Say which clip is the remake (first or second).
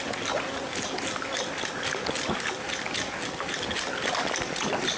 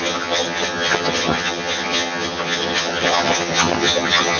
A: second